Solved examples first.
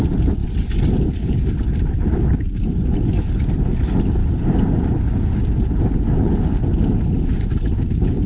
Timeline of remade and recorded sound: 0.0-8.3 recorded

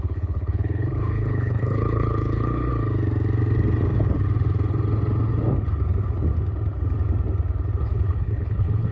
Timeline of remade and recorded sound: 0.0-2.7 remade; 2.7-7.8 recorded; 7.8-8.9 remade

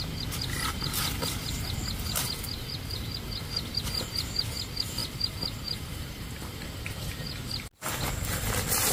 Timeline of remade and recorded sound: 0.0-8.9 recorded

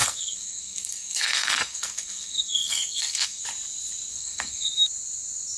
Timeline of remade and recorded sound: 0.0-3.4 remade; 3.4-4.1 recorded; 4.1-4.7 remade; 4.7-5.6 recorded

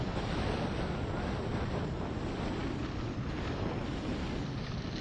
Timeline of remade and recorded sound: 0.0-5.0 recorded

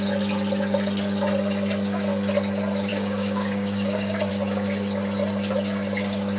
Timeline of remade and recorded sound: 0.0-2.9 recorded; 2.9-4.3 remade; 4.3-6.4 recorded

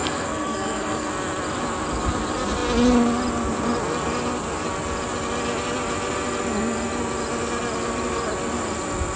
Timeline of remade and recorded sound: 0.0-1.1 remade; 1.1-9.2 recorded